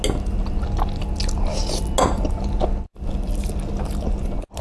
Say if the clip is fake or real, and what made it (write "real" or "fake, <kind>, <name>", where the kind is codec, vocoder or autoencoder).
real